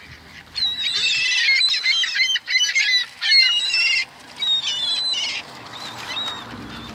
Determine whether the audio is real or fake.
real